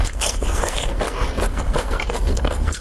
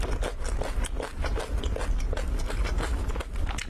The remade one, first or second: first